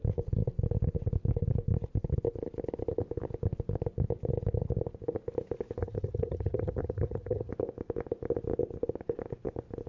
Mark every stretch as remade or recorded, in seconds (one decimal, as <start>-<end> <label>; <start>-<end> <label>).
0.0-5.8 recorded; 5.8-7.5 remade; 7.5-9.9 recorded